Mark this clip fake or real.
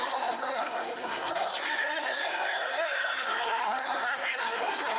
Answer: fake